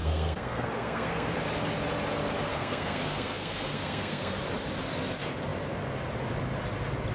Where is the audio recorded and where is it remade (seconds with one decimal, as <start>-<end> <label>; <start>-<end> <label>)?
0.0-1.4 remade; 1.4-2.5 recorded; 2.5-4.3 remade; 4.3-7.1 recorded

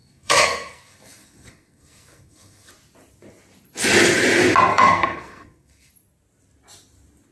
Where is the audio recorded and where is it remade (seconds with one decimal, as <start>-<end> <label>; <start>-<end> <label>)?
0.0-2.7 remade; 2.7-4.7 recorded; 4.7-5.9 remade; 5.9-7.3 recorded

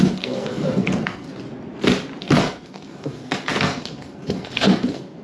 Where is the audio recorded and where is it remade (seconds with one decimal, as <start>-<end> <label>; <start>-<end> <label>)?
0.0-1.3 remade; 1.3-2.2 recorded; 2.2-5.2 remade

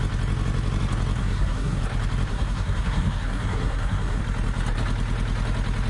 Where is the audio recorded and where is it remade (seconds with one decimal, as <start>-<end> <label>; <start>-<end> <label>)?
0.0-1.2 recorded; 1.2-1.8 remade; 1.8-2.3 recorded; 2.3-4.2 remade; 4.2-5.9 recorded

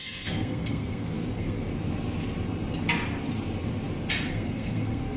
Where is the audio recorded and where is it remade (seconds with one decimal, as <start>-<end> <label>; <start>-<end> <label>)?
0.0-1.7 remade; 1.7-4.3 recorded; 4.3-5.2 remade

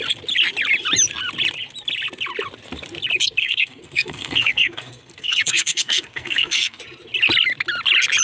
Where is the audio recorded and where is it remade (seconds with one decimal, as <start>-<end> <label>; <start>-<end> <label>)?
0.0-3.4 recorded; 3.4-6.8 remade; 6.8-8.2 recorded

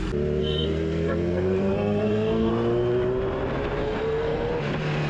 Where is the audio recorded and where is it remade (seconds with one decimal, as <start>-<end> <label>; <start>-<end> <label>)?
0.0-0.4 recorded; 0.4-2.5 remade; 2.5-3.8 recorded; 3.8-4.5 remade; 4.5-5.1 recorded

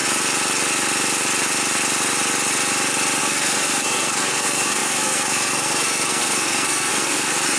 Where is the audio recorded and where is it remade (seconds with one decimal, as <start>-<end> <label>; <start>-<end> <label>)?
0.0-3.2 recorded; 3.2-7.6 remade